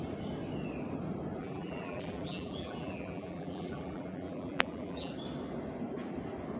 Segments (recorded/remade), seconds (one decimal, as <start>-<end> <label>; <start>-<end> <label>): 0.0-1.4 recorded; 1.4-5.1 remade; 5.1-6.6 recorded